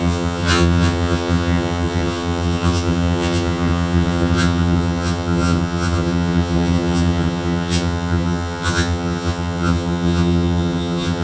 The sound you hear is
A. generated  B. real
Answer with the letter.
A